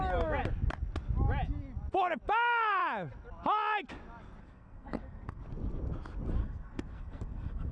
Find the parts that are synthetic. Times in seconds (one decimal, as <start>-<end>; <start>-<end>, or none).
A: 4.4-5.4; 6.4-7.7